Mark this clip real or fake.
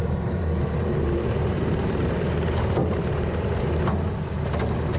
fake